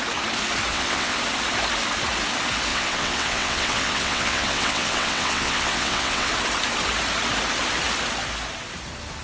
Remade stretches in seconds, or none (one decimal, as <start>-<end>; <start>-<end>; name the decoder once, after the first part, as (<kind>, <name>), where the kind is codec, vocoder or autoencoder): 0.7-1.2 (vocoder, WaveNeXt); 2.7-6.3